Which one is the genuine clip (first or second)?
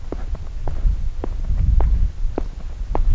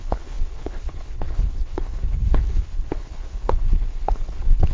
first